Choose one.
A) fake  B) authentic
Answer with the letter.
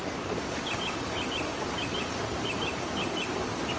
B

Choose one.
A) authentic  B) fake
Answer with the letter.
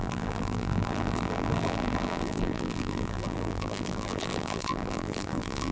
B